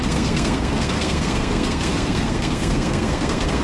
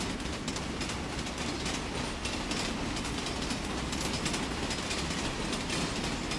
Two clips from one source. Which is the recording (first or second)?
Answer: second